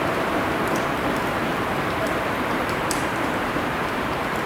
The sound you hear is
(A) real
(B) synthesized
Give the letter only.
B